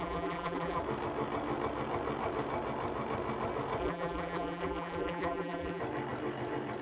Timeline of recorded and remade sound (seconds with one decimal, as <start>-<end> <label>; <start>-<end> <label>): 0.0-0.8 remade; 0.8-3.8 recorded; 3.8-5.8 remade; 5.8-6.8 recorded